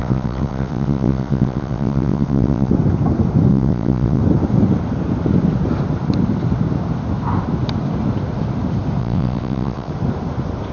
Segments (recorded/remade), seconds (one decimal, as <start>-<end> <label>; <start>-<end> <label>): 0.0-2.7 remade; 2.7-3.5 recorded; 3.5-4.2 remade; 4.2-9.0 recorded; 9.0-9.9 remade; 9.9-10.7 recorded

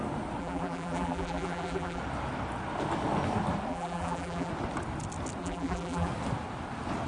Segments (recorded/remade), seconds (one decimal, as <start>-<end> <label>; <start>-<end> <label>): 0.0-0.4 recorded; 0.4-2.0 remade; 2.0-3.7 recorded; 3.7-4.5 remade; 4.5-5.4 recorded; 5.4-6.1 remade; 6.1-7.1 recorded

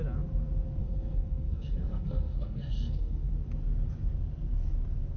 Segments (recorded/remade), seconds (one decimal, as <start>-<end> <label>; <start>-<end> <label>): 0.0-0.8 recorded; 0.8-3.3 remade; 3.3-5.2 recorded

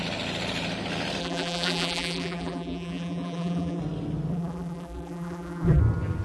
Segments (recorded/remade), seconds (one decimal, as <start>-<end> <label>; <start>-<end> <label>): 0.0-1.2 recorded; 1.2-3.8 remade; 3.8-4.3 recorded; 4.3-5.8 remade; 5.8-6.2 recorded

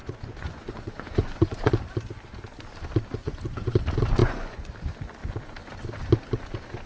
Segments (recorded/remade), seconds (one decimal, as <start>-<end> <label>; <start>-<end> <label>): 0.0-1.7 remade; 1.7-3.2 recorded; 3.2-3.8 remade; 3.8-4.2 recorded; 4.2-4.7 remade; 4.7-6.9 recorded

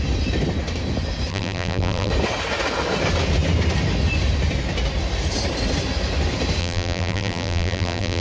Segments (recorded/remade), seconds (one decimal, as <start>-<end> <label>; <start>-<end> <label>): 0.0-1.3 recorded; 1.3-2.1 remade; 2.1-6.6 recorded; 6.6-8.2 remade